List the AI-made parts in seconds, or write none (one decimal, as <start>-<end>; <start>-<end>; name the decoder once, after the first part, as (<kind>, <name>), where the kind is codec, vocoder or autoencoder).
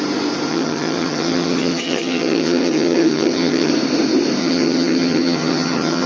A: 0.5-3.7 (vocoder, HiFi-GAN); 4.4-6.1